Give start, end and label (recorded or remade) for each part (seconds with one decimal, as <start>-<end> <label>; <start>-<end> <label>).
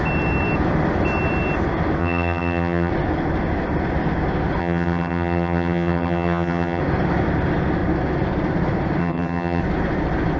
0.0-2.0 recorded; 2.0-2.9 remade; 2.9-4.6 recorded; 4.6-6.8 remade; 6.8-9.0 recorded; 9.0-9.6 remade; 9.6-10.4 recorded